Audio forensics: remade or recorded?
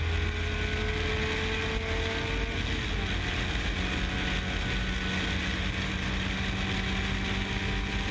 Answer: recorded